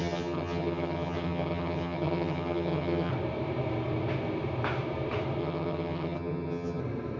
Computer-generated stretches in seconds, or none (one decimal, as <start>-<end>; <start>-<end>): 0.0-3.1; 5.4-6.8